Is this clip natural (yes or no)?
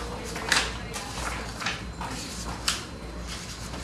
yes